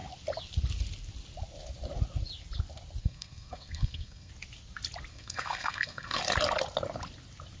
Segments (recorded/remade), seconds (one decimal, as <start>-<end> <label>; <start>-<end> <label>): 0.0-3.0 recorded; 3.0-4.3 remade; 4.3-5.1 recorded; 5.1-6.2 remade; 6.2-7.6 recorded